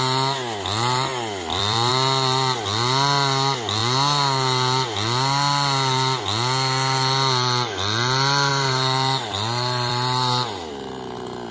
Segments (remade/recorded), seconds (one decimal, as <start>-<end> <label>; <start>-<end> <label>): 0.0-1.1 recorded; 1.1-1.9 remade; 1.9-8.5 recorded; 8.5-10.7 remade; 10.7-11.5 recorded